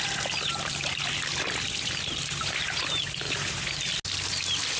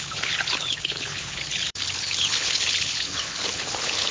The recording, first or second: first